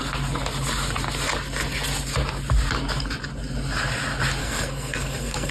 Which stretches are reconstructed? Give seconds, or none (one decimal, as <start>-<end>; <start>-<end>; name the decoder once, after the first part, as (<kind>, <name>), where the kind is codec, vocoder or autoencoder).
4.4-5.5 (codec, SNAC)